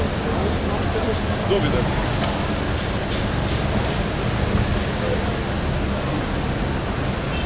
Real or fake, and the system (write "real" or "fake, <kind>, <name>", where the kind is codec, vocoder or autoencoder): real